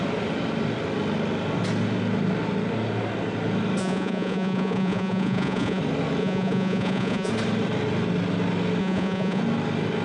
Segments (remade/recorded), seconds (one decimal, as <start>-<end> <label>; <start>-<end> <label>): 0.0-3.8 recorded; 3.8-5.8 remade; 5.8-6.2 recorded; 6.2-7.3 remade; 7.3-8.8 recorded; 8.8-9.4 remade; 9.4-10.0 recorded